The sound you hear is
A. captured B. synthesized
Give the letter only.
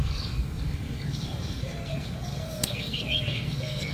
B